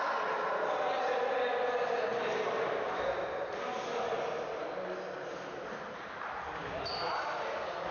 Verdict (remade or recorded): recorded